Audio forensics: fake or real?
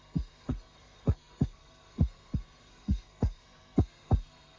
fake